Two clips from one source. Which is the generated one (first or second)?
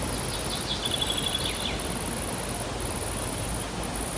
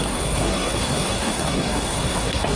second